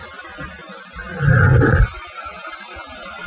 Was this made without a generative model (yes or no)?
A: yes